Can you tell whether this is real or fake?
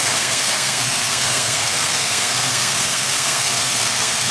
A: fake